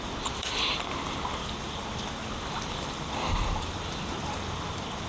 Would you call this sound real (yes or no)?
no